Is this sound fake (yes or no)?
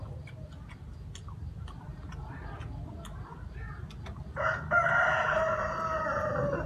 no